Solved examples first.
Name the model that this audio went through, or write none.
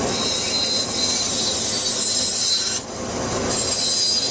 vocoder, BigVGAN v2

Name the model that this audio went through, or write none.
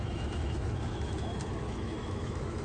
autoencoder, DAC-VAE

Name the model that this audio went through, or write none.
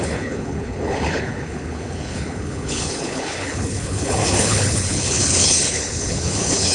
codec, HILCodec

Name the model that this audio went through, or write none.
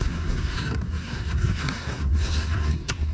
codec, SNAC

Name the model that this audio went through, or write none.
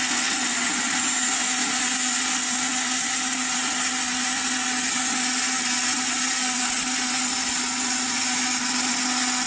none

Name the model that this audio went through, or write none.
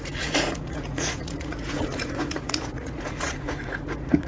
vocoder, Vocos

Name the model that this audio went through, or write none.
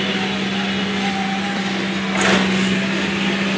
none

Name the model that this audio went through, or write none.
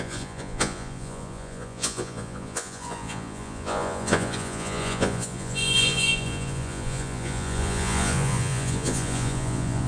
vocoder, Vocos